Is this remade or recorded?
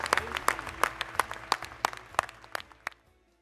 recorded